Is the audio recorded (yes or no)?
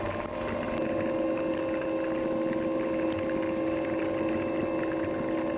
yes